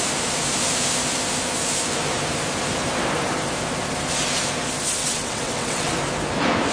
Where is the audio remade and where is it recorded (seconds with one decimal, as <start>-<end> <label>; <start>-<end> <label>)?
0.0-5.0 recorded; 5.0-5.9 remade; 5.9-6.7 recorded